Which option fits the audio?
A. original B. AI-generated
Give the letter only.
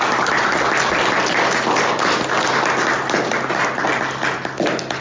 A